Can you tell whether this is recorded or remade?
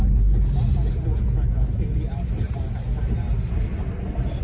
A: recorded